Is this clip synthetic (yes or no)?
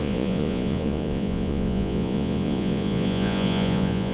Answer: yes